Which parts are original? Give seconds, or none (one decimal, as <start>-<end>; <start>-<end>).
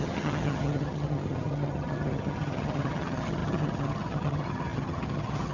none